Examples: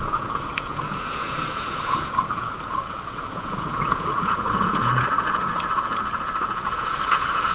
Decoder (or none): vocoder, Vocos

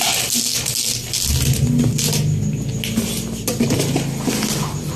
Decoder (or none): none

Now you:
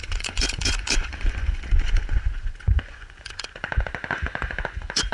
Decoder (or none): vocoder, Vocos